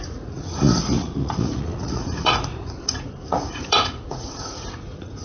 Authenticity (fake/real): fake